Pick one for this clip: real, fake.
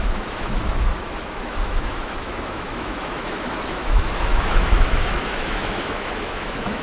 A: fake